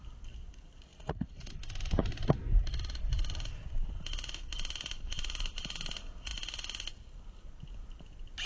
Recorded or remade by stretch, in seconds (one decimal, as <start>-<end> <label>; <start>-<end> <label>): 0.0-0.9 recorded; 0.9-1.5 remade; 1.5-8.5 recorded